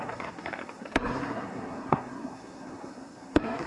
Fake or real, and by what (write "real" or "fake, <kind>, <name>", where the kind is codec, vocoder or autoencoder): fake, codec, SNAC